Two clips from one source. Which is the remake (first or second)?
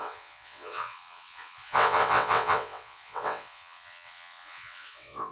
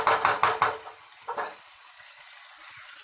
first